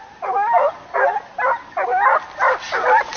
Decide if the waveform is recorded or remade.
recorded